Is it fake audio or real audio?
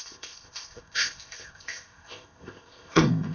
fake